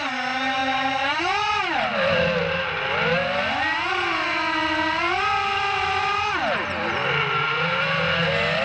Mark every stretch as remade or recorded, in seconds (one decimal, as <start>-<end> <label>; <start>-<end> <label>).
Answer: 0.0-8.6 recorded